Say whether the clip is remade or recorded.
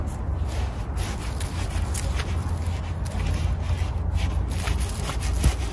recorded